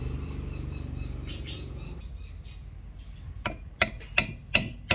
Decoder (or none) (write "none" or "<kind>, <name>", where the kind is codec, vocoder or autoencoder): none